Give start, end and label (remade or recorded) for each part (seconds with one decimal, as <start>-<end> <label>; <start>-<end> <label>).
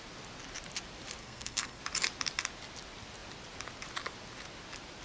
0.0-1.2 recorded; 1.2-1.8 remade; 1.8-5.0 recorded